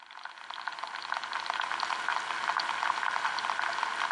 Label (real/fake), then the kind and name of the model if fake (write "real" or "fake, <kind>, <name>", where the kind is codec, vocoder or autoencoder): real